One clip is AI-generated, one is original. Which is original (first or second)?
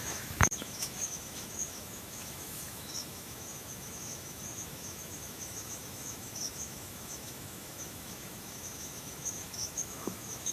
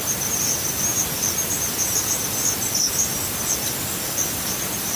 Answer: second